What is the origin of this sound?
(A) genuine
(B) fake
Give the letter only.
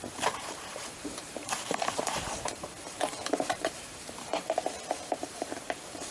B